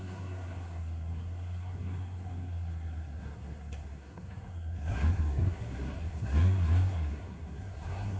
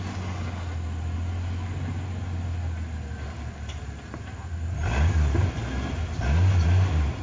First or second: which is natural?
second